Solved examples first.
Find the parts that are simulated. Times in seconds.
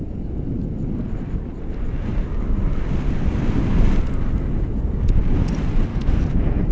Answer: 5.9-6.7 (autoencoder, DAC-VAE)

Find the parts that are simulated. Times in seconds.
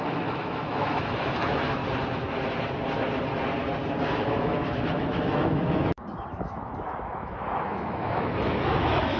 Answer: 0.0-1.8 (autoencoder, DAC-VAE); 4.0-9.2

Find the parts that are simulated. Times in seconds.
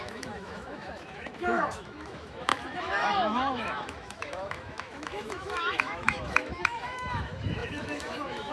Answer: 0.0-8.5 (autoencoder, DAC-VAE)